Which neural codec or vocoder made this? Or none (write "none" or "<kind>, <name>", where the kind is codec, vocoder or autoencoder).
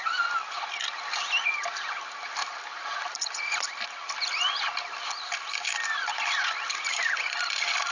none